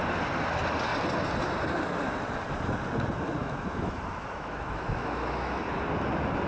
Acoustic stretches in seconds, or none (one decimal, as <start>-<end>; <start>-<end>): 0.0-3.4; 5.6-6.5